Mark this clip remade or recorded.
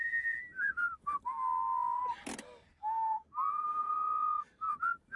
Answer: recorded